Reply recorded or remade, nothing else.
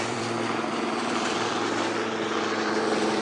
remade